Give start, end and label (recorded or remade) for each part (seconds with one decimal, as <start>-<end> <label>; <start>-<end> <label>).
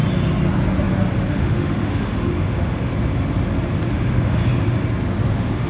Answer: 0.0-1.3 recorded; 1.3-2.9 remade; 2.9-3.9 recorded; 3.9-4.4 remade; 4.4-5.3 recorded; 5.3-5.7 remade